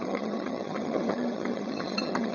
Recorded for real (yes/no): no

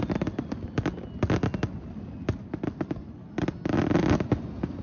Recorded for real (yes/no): yes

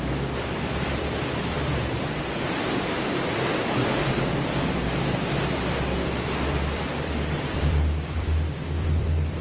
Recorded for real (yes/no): no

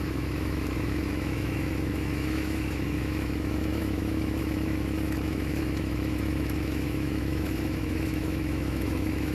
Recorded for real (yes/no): no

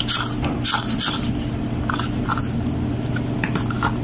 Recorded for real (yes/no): no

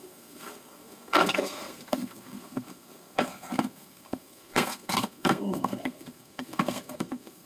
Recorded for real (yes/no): no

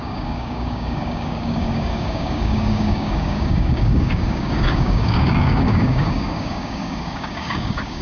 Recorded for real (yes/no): no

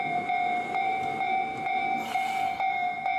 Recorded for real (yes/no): no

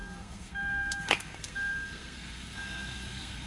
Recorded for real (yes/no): no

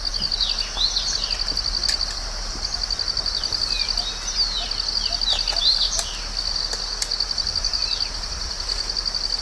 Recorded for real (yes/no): yes